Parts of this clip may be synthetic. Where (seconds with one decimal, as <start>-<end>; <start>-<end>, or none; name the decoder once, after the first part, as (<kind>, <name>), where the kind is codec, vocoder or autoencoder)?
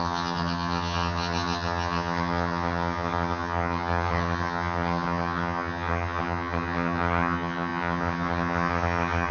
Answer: 0.0-9.3 (vocoder, HiFi-GAN)